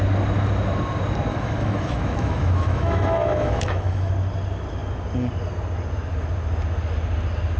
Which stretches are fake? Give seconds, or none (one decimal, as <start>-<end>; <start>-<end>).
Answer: 1.3-4.1